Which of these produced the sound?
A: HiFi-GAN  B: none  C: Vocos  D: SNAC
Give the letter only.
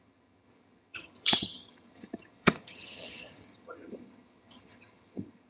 A